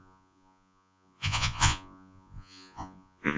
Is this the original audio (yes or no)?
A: no